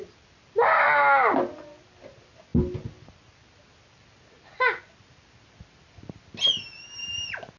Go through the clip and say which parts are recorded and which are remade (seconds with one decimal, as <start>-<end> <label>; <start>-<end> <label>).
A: 0.0-7.6 recorded